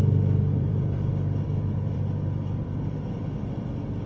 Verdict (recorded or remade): remade